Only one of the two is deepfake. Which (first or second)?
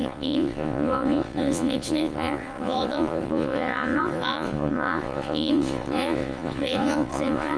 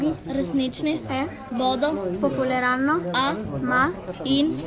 first